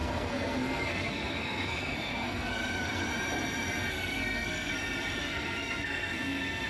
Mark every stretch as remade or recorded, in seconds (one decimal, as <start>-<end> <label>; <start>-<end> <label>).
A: 0.0-3.1 remade; 3.1-3.9 recorded; 3.9-4.7 remade; 4.7-5.2 recorded; 5.2-6.7 remade

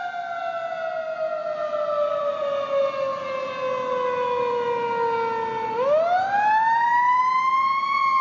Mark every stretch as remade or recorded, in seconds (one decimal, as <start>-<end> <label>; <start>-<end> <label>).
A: 0.0-8.2 recorded

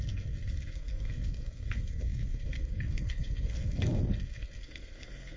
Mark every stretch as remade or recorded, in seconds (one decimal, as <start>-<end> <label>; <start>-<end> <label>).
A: 0.0-5.4 remade

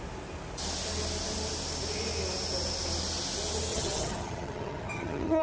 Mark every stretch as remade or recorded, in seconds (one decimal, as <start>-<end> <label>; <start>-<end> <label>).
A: 0.0-3.7 recorded; 3.7-5.4 remade

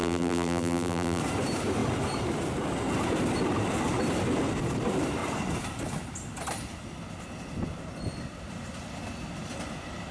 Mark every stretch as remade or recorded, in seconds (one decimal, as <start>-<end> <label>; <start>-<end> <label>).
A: 0.0-1.2 remade; 1.2-10.1 recorded

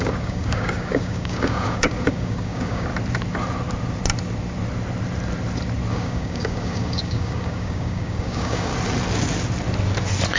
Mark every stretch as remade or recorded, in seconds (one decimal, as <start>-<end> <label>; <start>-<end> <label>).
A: 0.0-2.9 remade; 2.9-5.9 recorded; 5.9-8.7 remade; 8.7-10.4 recorded